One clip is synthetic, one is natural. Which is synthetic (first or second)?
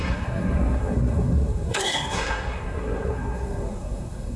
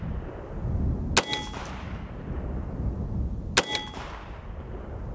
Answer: first